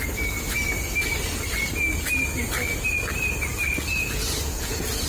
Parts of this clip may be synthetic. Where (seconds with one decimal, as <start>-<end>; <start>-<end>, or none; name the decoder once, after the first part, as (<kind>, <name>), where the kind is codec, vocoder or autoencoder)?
3.9-5.1 (vocoder, Vocos)